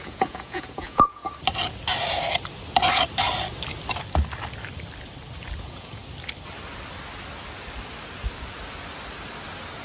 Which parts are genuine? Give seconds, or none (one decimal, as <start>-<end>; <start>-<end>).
1.2-5.6; 6.0-9.8